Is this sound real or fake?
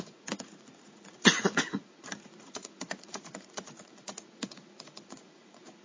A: fake